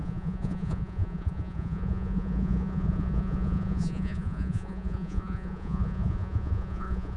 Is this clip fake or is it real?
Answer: fake